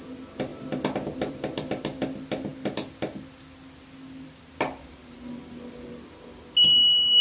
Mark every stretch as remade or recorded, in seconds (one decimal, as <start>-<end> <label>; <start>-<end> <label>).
0.0-7.2 recorded